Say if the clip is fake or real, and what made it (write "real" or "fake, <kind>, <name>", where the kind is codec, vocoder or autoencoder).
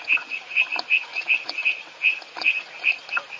fake, vocoder, Vocos